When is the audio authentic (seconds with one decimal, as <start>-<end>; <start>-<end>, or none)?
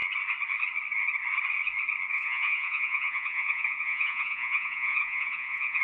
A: 0.0-2.1